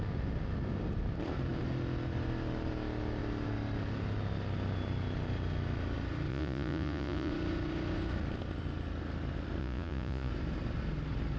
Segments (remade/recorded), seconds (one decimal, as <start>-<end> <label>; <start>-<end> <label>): 0.0-6.3 recorded; 6.3-7.3 remade; 7.3-9.6 recorded; 9.6-10.3 remade; 10.3-11.4 recorded